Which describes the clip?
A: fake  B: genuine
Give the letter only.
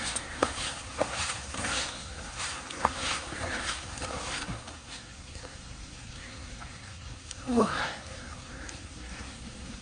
A